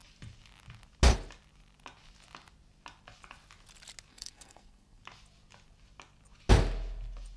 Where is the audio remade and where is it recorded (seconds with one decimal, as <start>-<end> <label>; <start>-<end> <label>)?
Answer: 0.0-4.1 recorded; 4.1-5.0 remade; 5.0-7.4 recorded